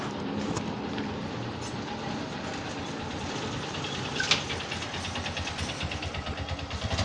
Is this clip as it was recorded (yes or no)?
yes